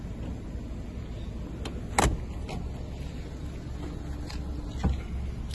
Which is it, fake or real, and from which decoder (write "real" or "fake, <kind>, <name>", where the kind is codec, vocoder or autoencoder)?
real